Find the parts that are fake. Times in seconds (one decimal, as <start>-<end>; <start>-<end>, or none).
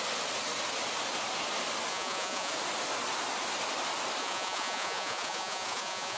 1.9-2.5; 4.2-6.2